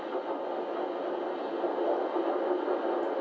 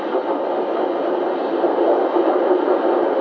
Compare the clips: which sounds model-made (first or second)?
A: second